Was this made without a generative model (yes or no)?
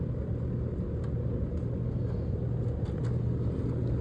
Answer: yes